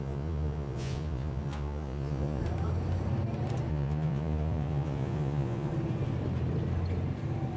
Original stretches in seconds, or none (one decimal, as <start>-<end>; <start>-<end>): 2.4-3.7; 5.7-7.6

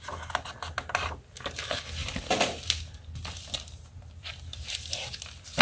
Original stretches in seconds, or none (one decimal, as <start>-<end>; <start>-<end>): 0.0-5.6

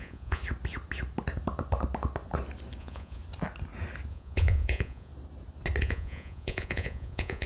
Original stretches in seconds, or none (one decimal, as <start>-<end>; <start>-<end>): 0.4-2.8; 3.2-4.1; 5.1-5.8

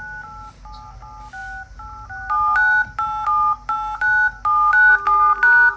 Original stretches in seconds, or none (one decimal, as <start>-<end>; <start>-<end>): 0.0-5.8

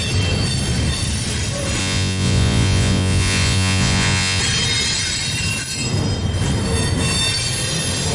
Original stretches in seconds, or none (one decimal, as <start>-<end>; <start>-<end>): 0.0-1.8; 4.4-8.1